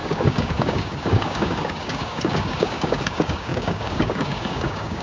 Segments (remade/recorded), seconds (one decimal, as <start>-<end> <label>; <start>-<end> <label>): 0.0-5.0 remade